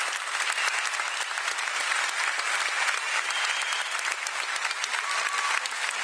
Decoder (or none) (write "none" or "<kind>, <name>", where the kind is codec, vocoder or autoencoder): none